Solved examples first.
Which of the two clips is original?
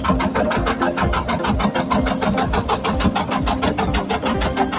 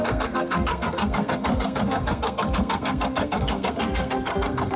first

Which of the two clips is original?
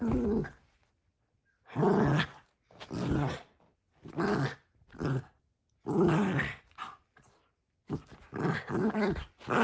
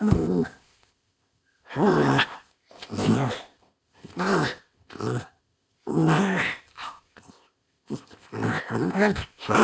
first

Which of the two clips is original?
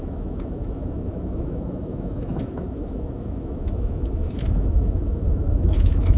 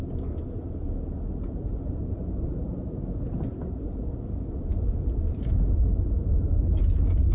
second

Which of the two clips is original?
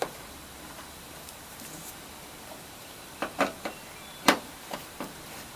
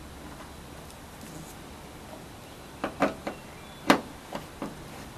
second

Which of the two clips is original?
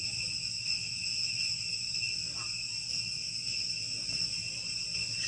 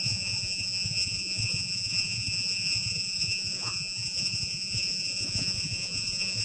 first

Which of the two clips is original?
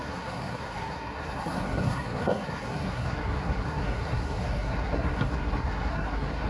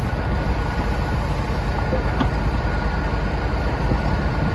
second